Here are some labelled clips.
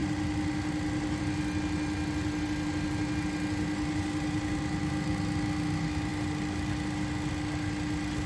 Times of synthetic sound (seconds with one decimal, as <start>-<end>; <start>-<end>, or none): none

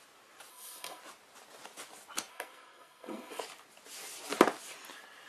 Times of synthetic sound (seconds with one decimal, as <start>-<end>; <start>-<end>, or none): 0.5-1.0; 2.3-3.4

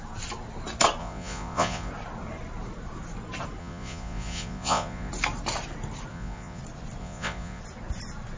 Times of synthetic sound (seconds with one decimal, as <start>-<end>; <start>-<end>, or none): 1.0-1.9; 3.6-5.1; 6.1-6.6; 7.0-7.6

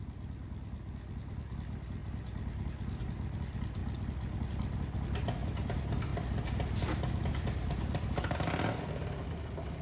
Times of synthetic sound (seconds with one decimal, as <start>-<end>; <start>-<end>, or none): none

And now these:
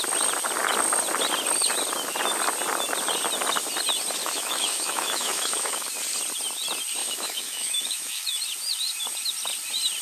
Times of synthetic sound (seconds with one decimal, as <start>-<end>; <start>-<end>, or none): 4.2-5.9; 7.0-8.4

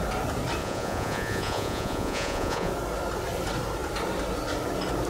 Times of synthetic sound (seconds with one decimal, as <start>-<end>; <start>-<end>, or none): 0.6-2.7

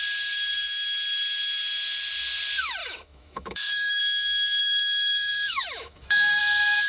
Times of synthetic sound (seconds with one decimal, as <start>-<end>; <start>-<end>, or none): 2.8-4.0; 4.6-6.4

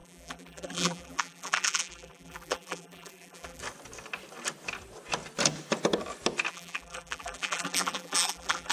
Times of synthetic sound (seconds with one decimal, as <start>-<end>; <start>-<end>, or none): 0.0-3.6; 6.5-8.7